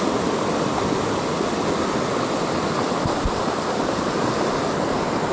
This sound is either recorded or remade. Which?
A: recorded